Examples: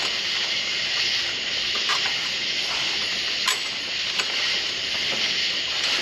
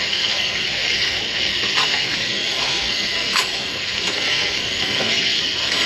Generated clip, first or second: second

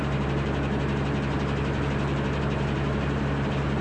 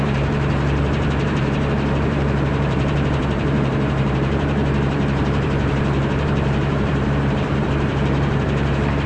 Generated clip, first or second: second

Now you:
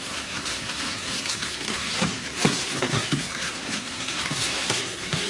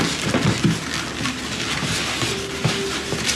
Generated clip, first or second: first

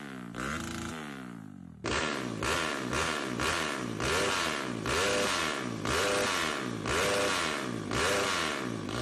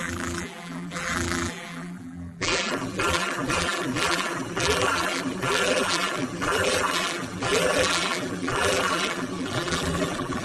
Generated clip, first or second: second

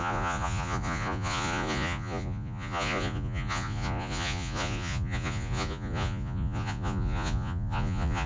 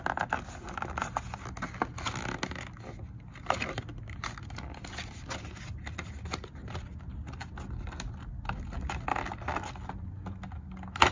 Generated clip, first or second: first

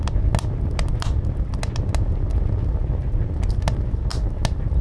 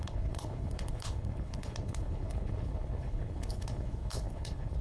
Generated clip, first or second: second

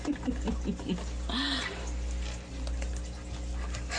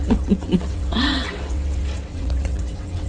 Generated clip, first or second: second